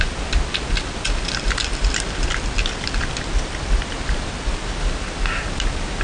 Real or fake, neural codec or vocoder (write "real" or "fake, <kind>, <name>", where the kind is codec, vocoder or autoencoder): real